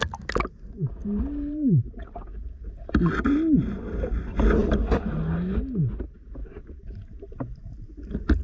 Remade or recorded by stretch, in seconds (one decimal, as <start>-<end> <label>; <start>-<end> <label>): 0.0-1.0 recorded; 1.0-2.2 remade; 2.2-4.6 recorded; 4.6-5.3 remade; 5.3-6.4 recorded; 6.4-7.7 remade; 7.7-8.4 recorded